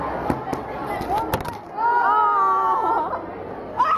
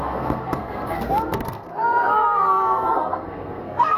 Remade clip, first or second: second